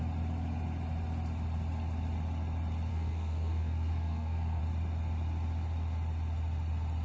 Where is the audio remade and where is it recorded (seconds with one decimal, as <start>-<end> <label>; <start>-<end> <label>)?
0.0-2.9 recorded; 2.9-4.6 remade; 4.6-7.0 recorded